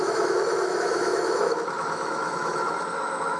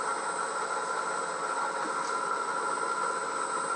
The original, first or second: second